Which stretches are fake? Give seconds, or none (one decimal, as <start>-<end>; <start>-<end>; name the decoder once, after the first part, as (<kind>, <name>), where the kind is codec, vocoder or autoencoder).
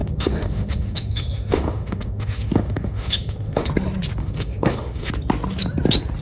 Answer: 0.0-3.7 (autoencoder, DAC-VAE); 4.2-5.1